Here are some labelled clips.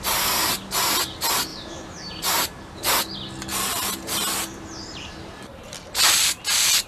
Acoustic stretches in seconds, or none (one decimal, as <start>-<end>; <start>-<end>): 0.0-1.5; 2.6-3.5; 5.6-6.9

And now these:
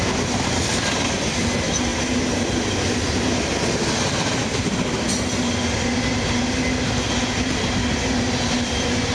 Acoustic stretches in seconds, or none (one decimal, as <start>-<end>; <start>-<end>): 0.0-9.1

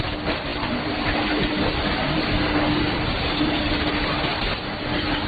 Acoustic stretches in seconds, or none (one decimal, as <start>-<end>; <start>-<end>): 0.0-0.5; 2.3-5.3

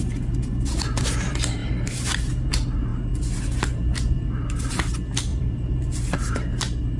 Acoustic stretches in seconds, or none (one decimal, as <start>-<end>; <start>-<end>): 0.0-5.3; 5.9-7.0

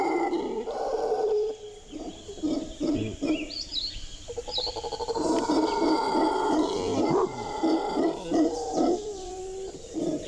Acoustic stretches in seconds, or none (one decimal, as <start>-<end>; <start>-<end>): none

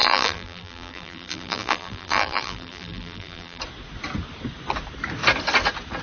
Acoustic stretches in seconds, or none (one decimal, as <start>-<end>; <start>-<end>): 3.6-6.0

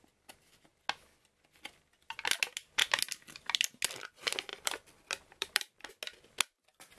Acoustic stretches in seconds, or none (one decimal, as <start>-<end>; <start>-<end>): 0.0-4.5; 5.9-7.0

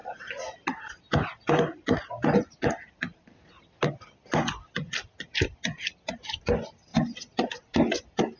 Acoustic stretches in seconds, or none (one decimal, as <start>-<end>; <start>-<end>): 3.5-6.9